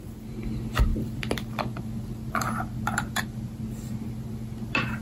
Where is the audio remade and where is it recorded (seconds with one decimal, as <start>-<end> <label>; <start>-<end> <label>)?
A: 0.0-5.0 recorded